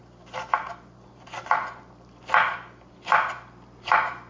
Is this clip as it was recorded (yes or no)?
yes